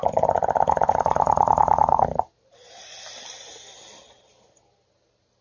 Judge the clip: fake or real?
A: fake